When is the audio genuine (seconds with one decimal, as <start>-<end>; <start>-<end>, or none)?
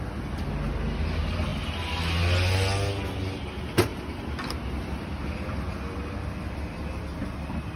0.0-7.8